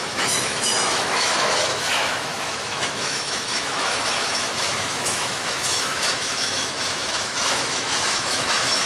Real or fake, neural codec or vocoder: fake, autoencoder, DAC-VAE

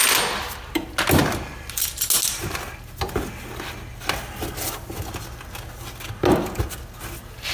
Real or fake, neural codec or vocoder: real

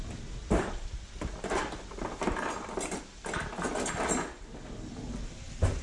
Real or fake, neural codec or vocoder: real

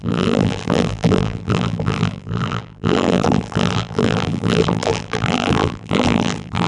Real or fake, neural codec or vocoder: fake, vocoder, BigVGAN v2